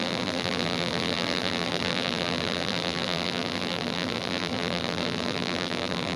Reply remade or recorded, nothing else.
remade